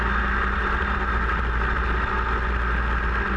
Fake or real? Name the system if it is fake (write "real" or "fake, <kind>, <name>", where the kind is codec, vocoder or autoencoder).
real